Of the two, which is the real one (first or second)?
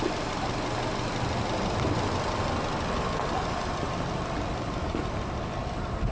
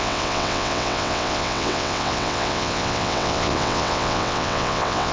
first